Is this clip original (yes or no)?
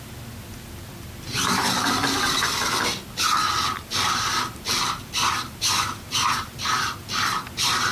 yes